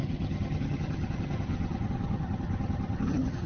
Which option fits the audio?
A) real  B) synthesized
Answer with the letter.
B